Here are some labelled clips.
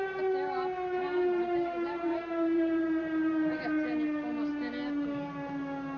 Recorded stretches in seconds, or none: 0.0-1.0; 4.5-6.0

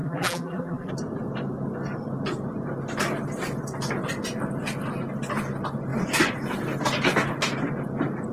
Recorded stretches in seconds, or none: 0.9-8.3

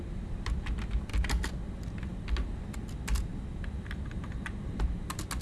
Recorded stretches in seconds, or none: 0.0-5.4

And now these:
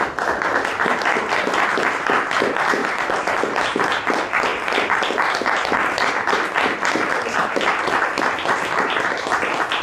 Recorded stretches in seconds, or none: 0.0-2.8; 3.6-7.4; 8.3-9.8

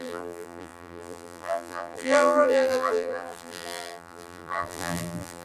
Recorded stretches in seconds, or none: none

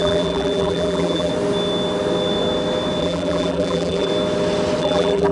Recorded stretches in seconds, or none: 1.3-3.0; 4.1-4.8